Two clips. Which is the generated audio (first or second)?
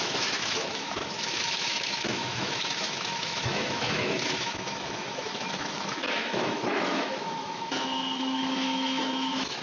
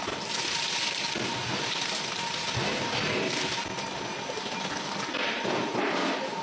first